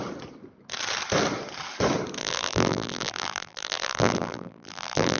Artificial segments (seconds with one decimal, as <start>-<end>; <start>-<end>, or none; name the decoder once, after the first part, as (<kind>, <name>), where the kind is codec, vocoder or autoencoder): 2.2-5.2 (vocoder, BigVGAN v2)